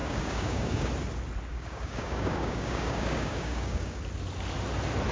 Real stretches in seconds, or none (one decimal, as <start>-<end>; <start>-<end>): 0.9-1.5; 4.0-5.1